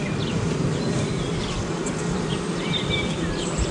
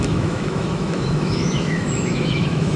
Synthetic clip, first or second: second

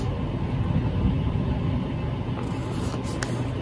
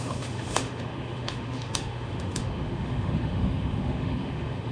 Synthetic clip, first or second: second